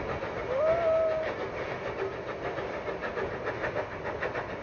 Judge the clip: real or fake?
real